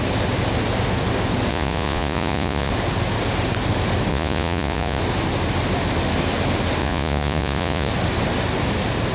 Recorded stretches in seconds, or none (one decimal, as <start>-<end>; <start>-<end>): 0.0-1.5; 2.7-4.1; 5.0-6.8; 7.9-9.1